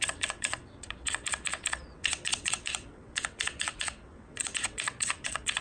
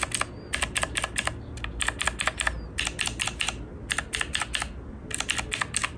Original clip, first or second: second